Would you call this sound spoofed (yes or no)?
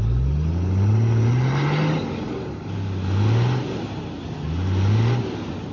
no